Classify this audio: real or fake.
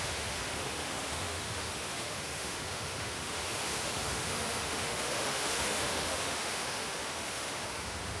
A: fake